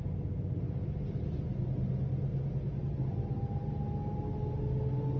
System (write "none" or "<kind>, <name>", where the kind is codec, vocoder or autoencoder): none